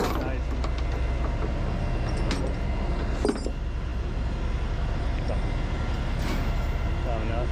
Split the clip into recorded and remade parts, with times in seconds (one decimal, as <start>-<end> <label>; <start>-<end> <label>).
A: 0.0-7.5 recorded